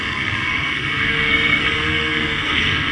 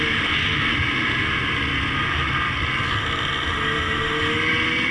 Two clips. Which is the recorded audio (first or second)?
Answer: second